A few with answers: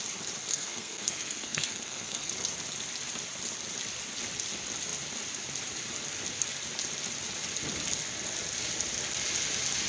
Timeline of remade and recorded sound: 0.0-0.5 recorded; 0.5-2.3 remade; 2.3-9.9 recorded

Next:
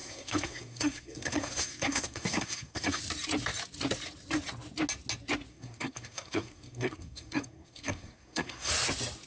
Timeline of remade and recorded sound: 0.0-3.0 remade; 3.0-5.5 recorded; 5.5-8.7 remade; 8.7-9.3 recorded

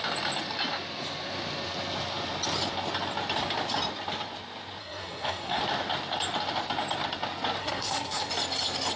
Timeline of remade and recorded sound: 0.0-4.8 recorded; 4.8-5.6 remade; 5.6-7.6 recorded; 7.6-8.3 remade; 8.3-9.0 recorded

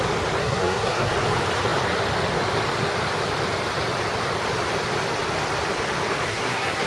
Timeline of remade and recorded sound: 0.0-0.4 recorded; 0.4-1.1 remade; 1.1-6.3 recorded; 6.3-6.9 remade